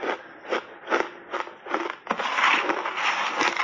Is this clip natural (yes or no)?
yes